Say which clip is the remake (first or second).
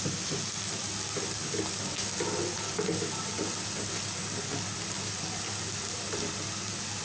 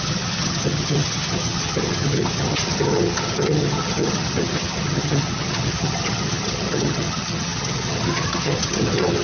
second